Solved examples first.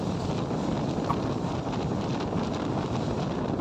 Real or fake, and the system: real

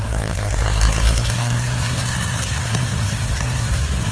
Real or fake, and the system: fake, codec, SNAC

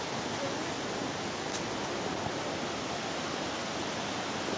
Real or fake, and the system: real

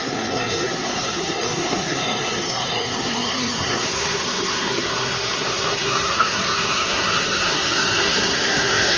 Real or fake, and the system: fake, codec, SNAC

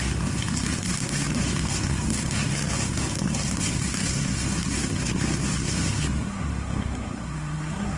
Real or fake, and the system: fake, codec, SNAC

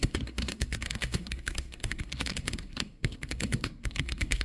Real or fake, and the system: fake, codec, SNAC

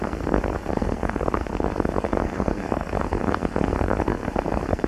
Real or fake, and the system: fake, codec, SNAC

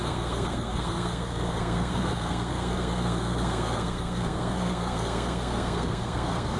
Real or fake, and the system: fake, codec, SNAC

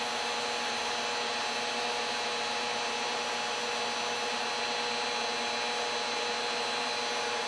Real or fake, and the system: real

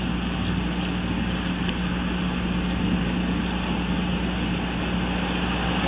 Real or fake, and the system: real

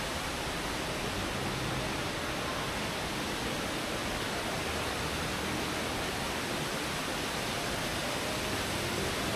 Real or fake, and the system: real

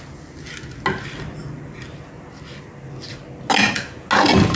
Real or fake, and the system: real